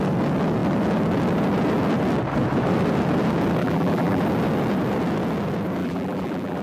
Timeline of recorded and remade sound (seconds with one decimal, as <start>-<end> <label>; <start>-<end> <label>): 0.0-3.6 recorded; 3.6-4.2 remade; 4.2-5.8 recorded; 5.8-6.6 remade

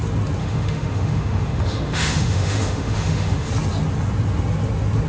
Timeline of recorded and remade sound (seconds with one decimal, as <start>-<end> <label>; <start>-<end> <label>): 0.0-0.4 recorded; 0.4-3.5 remade; 3.5-5.1 recorded